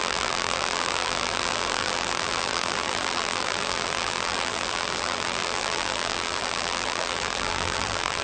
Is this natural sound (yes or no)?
no